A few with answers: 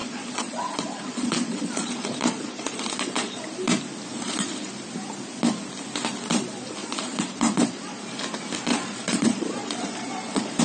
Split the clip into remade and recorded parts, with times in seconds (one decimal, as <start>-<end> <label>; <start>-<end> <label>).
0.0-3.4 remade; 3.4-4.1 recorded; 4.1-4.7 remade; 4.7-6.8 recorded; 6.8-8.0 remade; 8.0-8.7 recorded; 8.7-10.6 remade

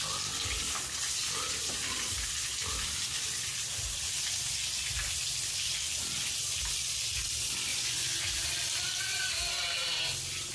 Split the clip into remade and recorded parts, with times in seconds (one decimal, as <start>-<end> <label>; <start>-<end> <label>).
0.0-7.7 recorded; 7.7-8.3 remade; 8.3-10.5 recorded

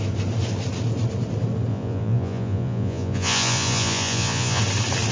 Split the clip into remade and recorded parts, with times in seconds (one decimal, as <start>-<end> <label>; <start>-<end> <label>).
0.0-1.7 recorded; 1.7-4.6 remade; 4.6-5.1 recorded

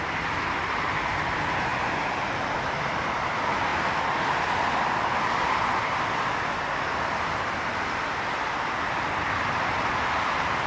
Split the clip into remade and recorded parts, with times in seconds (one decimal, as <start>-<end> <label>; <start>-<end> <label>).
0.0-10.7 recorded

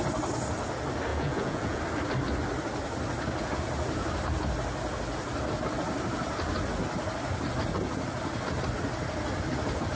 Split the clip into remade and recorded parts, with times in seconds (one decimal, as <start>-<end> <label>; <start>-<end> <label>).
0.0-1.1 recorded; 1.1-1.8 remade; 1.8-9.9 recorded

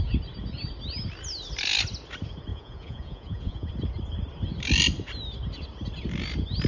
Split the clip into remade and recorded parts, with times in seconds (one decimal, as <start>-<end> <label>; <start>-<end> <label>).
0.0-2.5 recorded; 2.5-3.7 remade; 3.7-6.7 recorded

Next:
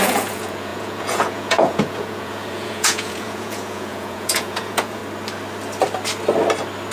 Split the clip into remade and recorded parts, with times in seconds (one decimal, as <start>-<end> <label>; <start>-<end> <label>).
0.0-5.0 remade; 5.0-6.9 recorded